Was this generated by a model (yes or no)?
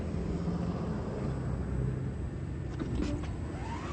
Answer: no